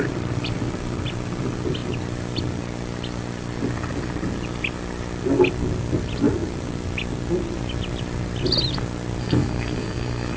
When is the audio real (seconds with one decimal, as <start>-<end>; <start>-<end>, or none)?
0.0-9.2